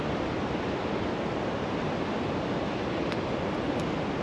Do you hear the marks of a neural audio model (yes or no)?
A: no